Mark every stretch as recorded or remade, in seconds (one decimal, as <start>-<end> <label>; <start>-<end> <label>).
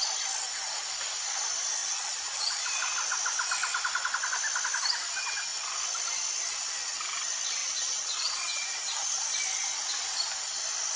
0.0-1.8 recorded; 1.8-2.6 remade; 2.6-7.6 recorded; 7.6-9.2 remade; 9.2-11.0 recorded